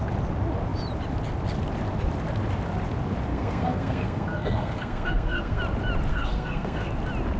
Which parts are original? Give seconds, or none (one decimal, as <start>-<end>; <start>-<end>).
0.0-3.3; 5.6-6.1; 6.9-7.4